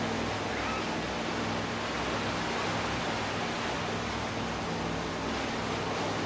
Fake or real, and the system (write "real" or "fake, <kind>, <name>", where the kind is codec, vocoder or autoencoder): real